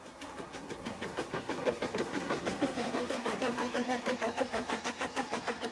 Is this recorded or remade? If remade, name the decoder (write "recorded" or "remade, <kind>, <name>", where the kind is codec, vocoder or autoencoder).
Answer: remade, codec, SNAC